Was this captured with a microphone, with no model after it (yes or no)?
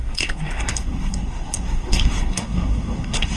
no